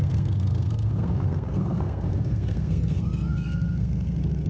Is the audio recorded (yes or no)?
no